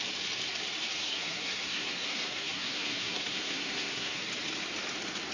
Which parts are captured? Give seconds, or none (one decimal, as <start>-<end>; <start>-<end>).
0.0-1.0; 4.2-5.3

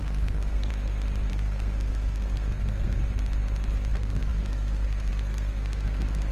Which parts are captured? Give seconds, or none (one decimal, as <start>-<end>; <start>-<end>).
0.7-1.3; 3.0-3.9

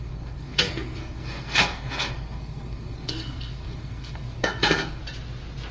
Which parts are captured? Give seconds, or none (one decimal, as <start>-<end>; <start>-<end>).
5.0-5.7